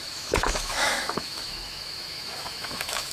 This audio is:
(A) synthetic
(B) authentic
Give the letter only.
A